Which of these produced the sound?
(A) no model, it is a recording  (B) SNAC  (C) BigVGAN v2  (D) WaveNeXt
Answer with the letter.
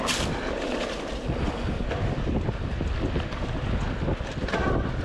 A